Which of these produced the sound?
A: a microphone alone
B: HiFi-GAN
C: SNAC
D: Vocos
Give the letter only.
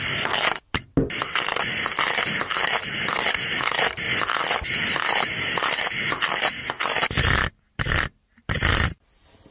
A